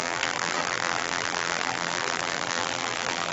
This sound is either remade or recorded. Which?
remade